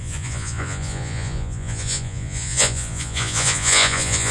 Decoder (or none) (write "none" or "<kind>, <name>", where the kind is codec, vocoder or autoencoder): vocoder, Vocos